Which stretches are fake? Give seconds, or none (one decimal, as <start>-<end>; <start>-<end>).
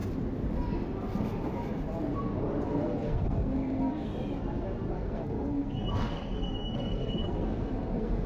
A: 2.7-4.1; 4.9-8.3